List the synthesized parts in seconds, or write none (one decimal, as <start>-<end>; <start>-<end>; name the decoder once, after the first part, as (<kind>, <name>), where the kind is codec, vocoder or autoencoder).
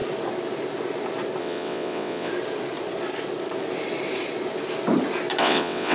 1.4-2.3 (vocoder, WaveNeXt); 5.4-5.9